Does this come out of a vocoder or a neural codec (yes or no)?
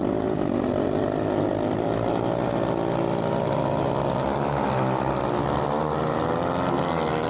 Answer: no